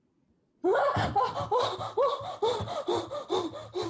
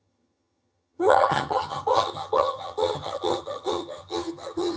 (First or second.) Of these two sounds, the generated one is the second